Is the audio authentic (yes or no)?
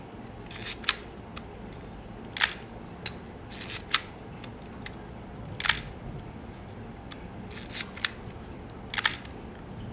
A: yes